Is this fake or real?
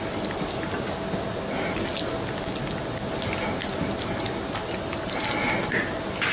real